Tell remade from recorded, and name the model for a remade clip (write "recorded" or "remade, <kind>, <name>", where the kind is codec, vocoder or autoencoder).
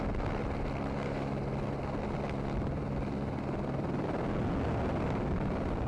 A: recorded